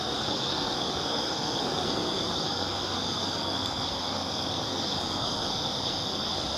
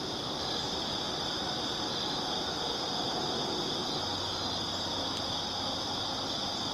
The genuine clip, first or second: second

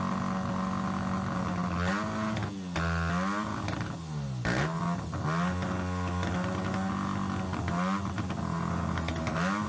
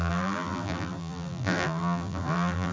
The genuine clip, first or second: first